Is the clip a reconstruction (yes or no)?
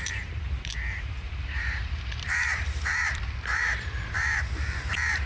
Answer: yes